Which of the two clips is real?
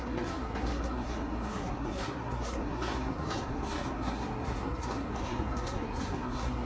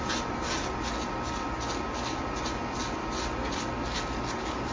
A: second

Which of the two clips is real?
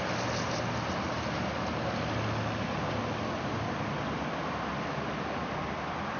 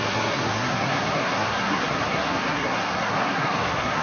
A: first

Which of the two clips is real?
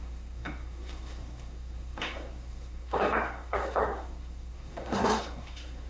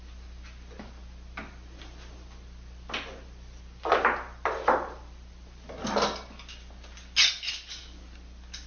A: second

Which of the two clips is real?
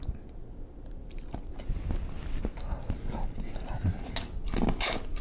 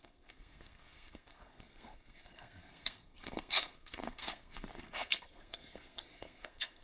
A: first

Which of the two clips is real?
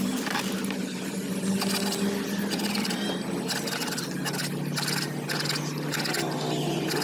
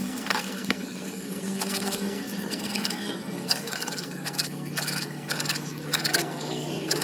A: first